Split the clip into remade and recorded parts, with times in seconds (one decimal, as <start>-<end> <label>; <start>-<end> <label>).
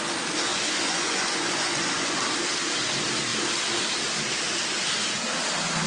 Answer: 0.0-0.5 recorded; 0.5-2.2 remade; 2.2-5.9 recorded